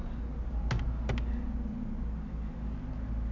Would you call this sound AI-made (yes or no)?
no